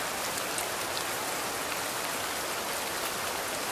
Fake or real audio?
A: real